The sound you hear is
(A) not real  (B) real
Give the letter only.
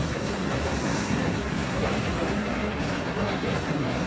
A